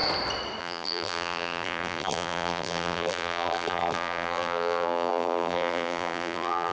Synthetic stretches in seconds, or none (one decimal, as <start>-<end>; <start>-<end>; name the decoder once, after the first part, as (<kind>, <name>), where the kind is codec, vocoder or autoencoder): 0.6-6.7 (vocoder, BigVGAN v2)